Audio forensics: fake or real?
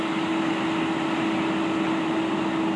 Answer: real